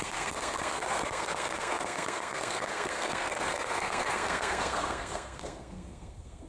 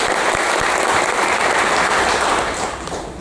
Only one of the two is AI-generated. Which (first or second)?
first